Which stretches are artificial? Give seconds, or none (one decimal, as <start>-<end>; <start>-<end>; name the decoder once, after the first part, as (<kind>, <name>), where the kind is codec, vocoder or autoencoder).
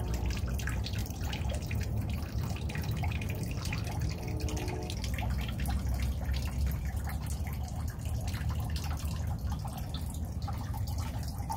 1.0-2.2 (vocoder, BigVGAN v2)